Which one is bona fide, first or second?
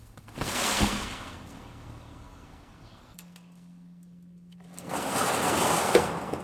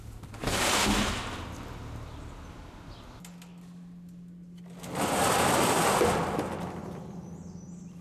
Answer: second